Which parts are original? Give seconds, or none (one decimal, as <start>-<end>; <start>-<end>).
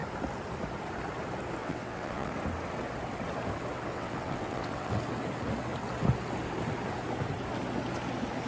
0.0-1.6; 2.3-3.9; 5.0-8.5